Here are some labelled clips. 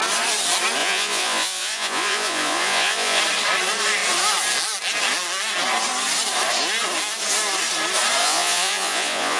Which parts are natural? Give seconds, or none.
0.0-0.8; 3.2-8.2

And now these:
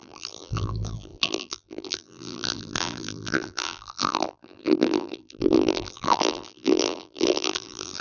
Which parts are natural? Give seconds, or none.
none

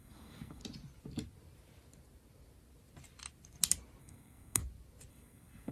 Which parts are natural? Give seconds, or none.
0.6-4.0; 4.6-5.1

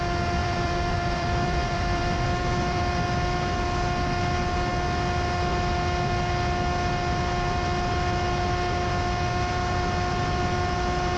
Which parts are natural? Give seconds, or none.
0.0-0.4; 2.8-11.2